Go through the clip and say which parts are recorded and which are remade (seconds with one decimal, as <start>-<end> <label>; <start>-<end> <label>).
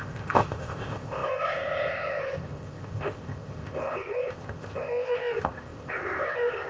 0.0-6.7 remade